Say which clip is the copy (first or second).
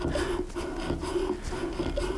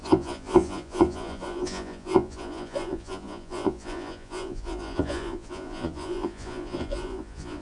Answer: second